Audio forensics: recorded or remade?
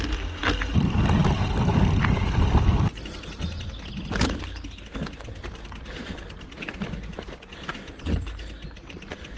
recorded